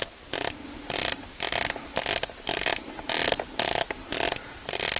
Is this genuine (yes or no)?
yes